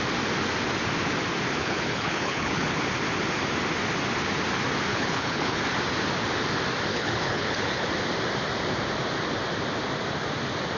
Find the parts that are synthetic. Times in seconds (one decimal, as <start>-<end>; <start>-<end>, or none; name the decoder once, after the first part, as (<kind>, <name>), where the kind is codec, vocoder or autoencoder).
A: 1.6-2.8 (codec, HILCodec); 4.9-5.6; 6.9-7.9